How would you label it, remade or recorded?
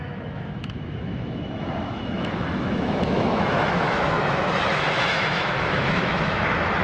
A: remade